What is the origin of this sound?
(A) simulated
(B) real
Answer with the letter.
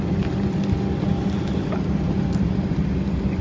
B